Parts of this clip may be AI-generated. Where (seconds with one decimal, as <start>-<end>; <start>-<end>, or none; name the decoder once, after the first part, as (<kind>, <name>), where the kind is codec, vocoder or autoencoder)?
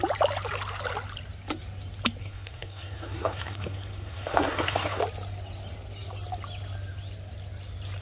2.2-5.0 (codec, SNAC)